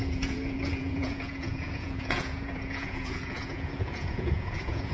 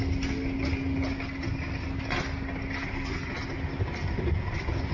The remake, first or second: first